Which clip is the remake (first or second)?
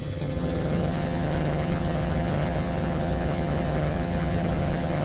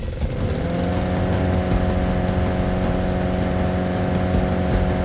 first